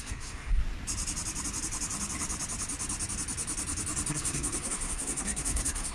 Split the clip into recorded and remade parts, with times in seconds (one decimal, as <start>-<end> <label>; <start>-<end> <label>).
0.0-0.6 remade; 0.6-4.1 recorded; 4.1-5.9 remade